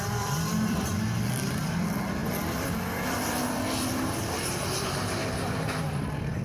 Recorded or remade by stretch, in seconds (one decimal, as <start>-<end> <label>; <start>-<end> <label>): 0.0-0.9 remade; 0.9-1.6 recorded; 1.6-2.2 remade; 2.2-3.1 recorded; 3.1-5.2 remade; 5.2-5.8 recorded; 5.8-6.4 remade